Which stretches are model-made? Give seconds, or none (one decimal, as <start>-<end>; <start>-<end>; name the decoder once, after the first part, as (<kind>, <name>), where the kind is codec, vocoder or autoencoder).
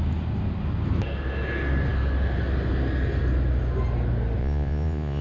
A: 4.4-5.2 (vocoder, Vocos)